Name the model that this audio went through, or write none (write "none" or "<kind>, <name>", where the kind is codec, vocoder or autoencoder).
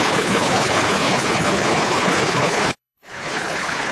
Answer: codec, HILCodec